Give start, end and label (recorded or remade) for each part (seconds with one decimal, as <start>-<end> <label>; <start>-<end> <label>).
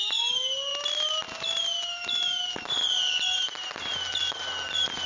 0.0-5.1 recorded